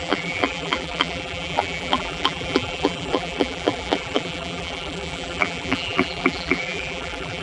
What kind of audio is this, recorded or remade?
remade